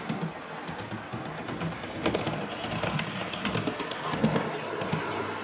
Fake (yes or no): no